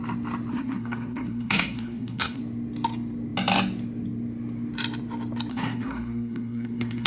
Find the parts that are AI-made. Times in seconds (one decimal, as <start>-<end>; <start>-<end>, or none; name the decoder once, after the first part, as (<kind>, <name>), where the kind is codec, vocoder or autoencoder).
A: 0.5-2.4 (codec, SNAC); 5.5-7.1